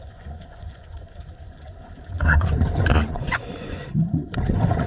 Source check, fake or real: fake